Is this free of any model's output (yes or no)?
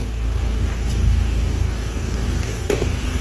no